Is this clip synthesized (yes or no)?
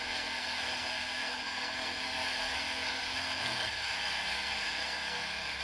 yes